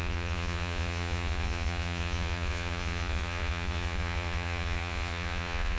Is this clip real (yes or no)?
no